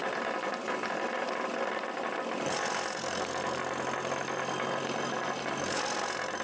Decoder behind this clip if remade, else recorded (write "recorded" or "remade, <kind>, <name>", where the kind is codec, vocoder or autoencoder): recorded